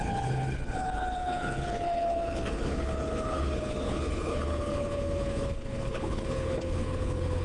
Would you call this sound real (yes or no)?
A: no